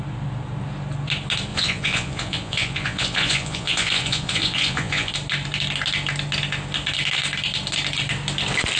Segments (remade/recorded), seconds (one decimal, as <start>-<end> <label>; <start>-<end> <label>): 0.0-1.5 recorded; 1.5-5.1 remade; 5.1-8.8 recorded